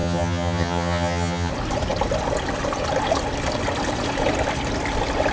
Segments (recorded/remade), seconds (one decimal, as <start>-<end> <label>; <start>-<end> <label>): 0.0-1.5 remade; 1.5-5.3 recorded